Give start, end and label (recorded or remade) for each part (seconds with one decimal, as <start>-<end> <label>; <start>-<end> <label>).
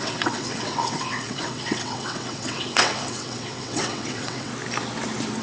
0.0-4.5 remade; 4.5-5.4 recorded